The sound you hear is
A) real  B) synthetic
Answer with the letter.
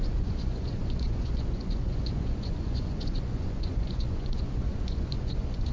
B